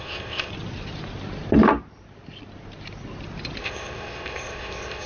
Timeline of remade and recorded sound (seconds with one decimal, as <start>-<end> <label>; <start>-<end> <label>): 0.0-0.5 remade; 0.5-3.6 recorded; 3.6-5.1 remade